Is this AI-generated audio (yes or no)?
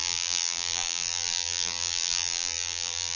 yes